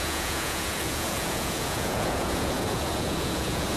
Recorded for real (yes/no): no